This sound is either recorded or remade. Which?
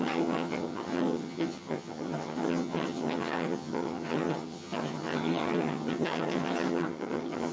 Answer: remade